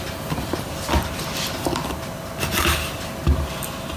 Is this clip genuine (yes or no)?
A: yes